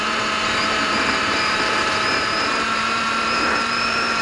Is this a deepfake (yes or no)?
yes